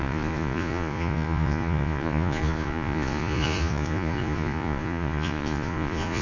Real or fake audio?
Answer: fake